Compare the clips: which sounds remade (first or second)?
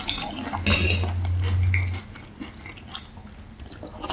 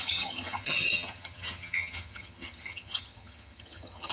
second